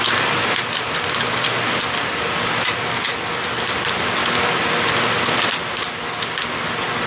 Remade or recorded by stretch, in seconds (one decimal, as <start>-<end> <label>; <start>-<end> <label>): 0.0-7.1 recorded